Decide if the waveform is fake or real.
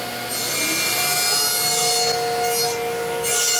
real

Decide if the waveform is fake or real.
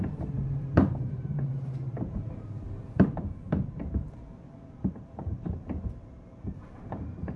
fake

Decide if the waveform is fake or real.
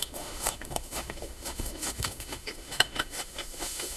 fake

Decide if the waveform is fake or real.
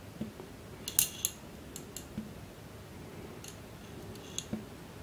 real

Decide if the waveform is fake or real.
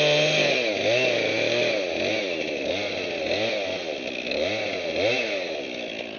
real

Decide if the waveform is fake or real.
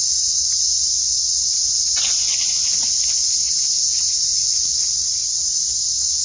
real